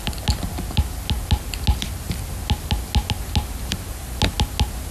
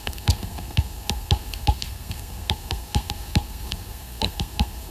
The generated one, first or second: second